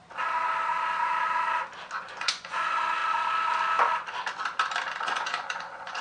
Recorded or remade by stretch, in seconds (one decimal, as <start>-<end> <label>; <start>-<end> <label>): 0.0-2.0 recorded; 2.0-3.0 remade; 3.0-5.0 recorded; 5.0-6.0 remade